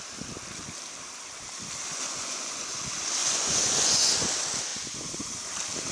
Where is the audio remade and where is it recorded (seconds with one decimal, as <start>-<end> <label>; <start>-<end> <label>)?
0.0-1.9 recorded; 1.9-2.8 remade; 2.8-3.2 recorded; 3.2-4.3 remade; 4.3-4.7 recorded; 4.7-5.4 remade; 5.4-5.9 recorded